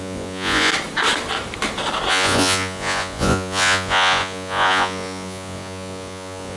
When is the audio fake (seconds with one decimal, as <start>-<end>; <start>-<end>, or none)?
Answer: 0.0-0.7; 2.1-6.6

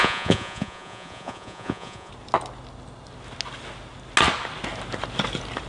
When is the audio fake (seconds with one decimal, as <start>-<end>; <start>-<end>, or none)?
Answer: 0.0-2.1

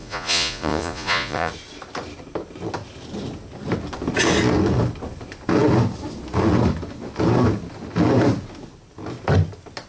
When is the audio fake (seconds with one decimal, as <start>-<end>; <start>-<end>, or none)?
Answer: 0.0-1.5

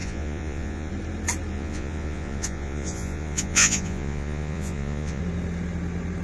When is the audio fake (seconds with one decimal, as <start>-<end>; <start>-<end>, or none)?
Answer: 0.0-0.9; 1.5-5.2

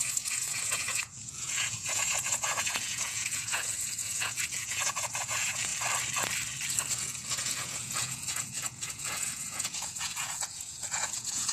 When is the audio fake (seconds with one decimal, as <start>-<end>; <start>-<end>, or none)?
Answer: 0.0-5.7; 6.9-11.5

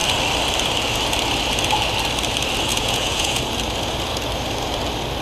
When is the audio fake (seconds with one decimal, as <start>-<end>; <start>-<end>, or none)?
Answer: 2.7-3.4

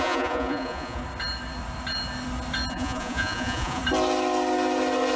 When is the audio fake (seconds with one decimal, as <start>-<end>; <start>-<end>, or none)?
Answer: 0.0-1.0; 2.7-3.8

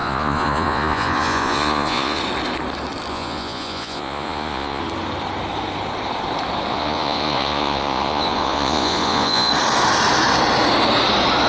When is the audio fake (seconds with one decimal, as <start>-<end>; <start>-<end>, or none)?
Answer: 0.0-2.2; 3.1-4.8; 6.7-9.5